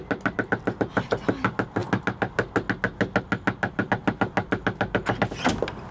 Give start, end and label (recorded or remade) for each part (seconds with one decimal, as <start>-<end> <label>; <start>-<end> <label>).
0.0-5.9 recorded